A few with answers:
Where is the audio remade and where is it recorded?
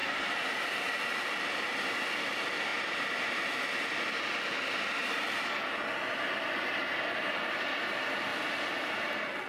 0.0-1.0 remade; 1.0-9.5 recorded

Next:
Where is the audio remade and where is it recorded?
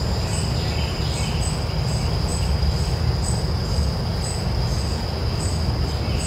0.0-1.0 remade; 1.0-2.3 recorded; 2.3-2.8 remade; 2.8-6.3 recorded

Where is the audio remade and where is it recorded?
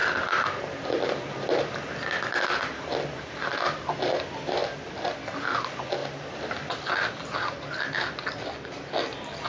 0.0-1.9 remade; 1.9-9.5 recorded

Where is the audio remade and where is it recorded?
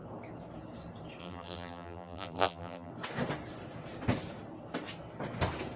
0.0-1.2 recorded; 1.2-2.9 remade; 2.9-5.8 recorded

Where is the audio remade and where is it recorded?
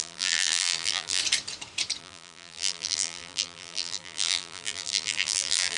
0.0-1.2 remade; 1.2-2.0 recorded; 2.0-5.8 remade